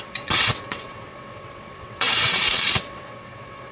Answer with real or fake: fake